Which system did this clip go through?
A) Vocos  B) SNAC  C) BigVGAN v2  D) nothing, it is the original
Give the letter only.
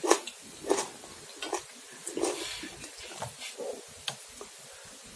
D